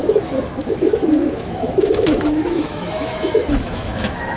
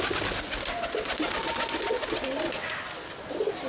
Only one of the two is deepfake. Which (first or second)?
first